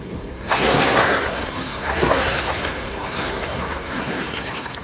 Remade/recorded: remade